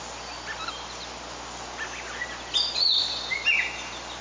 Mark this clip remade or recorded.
recorded